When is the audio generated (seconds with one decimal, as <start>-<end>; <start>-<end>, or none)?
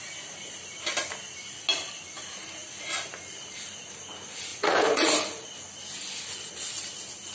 4.5-5.1